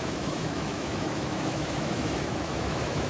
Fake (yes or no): yes